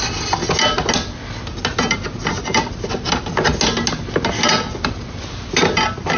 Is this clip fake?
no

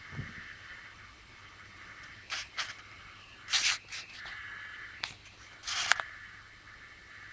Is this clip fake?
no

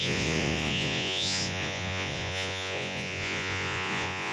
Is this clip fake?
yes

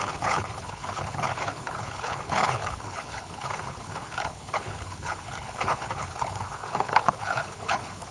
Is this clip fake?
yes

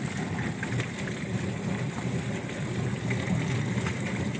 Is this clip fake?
yes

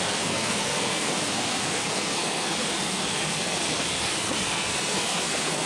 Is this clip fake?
yes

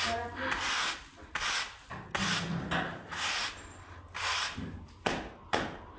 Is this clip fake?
no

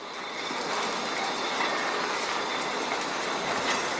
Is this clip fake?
no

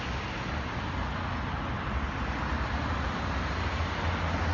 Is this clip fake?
no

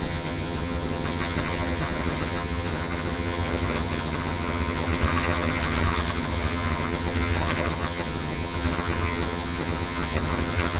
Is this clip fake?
yes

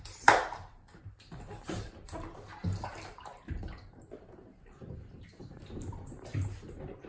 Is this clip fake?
yes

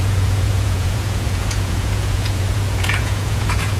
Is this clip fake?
yes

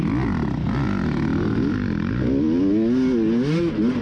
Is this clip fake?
no